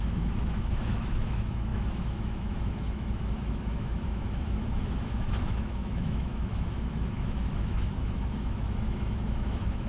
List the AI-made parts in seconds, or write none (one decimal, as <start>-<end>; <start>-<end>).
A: 0.0-9.9